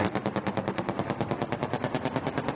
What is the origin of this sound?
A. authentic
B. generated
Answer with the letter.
A